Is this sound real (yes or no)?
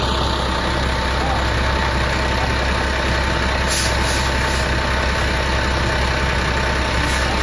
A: yes